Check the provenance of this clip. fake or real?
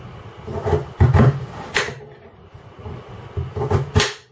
real